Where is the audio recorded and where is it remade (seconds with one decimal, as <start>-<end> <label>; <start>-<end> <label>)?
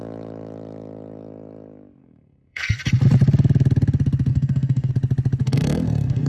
0.0-2.0 recorded; 2.0-2.8 remade; 2.8-4.3 recorded; 4.3-4.9 remade; 4.9-5.4 recorded; 5.4-6.3 remade